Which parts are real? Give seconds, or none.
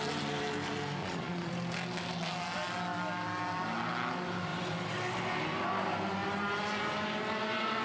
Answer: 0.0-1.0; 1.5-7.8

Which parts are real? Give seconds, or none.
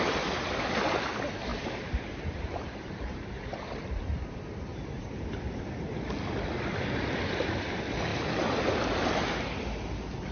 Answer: 0.0-1.5; 5.6-10.3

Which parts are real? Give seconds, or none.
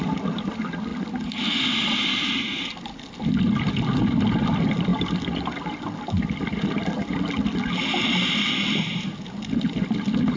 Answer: 0.0-10.4